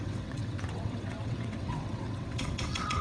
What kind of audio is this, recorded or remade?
remade